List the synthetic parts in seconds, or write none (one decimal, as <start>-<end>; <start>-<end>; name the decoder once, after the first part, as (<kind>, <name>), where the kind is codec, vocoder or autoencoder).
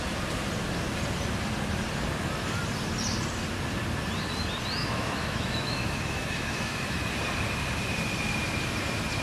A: 4.8-7.0 (autoencoder, DAC-VAE)